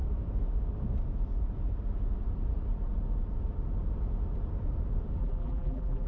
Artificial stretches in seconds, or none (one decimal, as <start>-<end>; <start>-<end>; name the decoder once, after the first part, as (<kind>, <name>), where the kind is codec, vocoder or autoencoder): 5.2-6.1 (vocoder, BigVGAN v2)